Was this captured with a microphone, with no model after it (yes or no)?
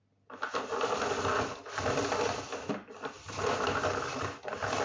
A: yes